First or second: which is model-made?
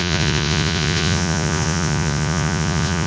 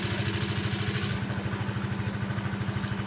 first